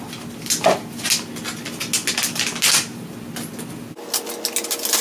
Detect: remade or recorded recorded